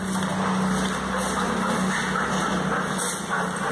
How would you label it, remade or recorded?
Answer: recorded